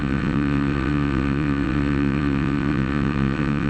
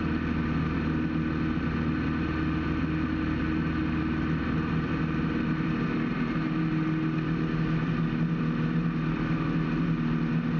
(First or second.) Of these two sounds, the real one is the second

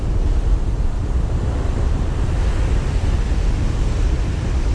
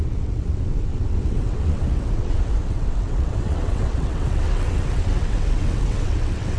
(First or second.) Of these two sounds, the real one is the first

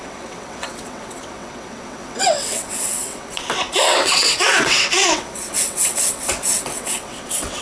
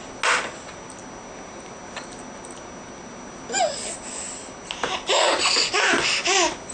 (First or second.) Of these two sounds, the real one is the second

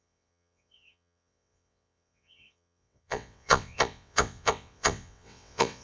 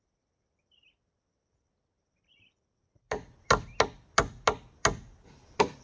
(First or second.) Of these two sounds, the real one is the second